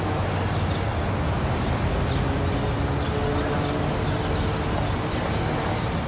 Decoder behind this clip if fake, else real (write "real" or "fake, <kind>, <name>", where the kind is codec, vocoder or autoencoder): real